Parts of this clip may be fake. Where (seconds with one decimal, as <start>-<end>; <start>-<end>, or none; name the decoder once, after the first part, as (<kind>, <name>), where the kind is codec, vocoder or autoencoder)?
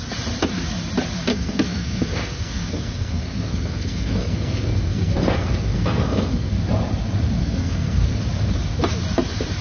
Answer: 1.3-6.5 (codec, SNAC); 7.4-8.2